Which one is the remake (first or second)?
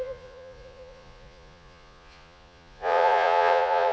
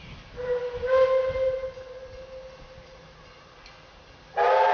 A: first